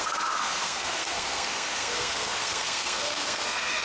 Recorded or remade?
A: remade